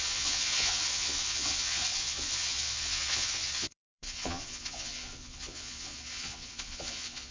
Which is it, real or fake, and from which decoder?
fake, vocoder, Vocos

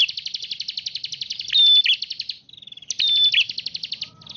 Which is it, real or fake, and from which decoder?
real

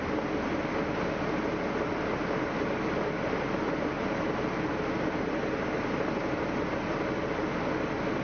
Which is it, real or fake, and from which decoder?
real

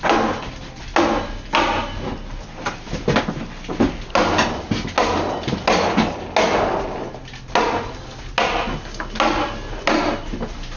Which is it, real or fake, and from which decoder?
real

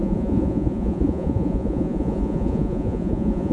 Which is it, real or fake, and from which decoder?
fake, vocoder, Vocos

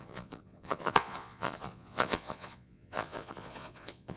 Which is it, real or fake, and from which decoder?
fake, vocoder, Vocos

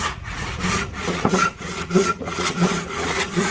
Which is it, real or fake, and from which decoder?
fake, vocoder, Vocos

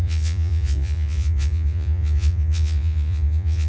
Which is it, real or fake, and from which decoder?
fake, vocoder, Vocos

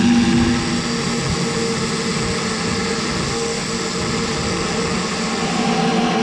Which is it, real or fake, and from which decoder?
real